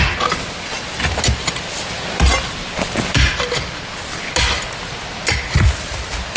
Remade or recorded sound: recorded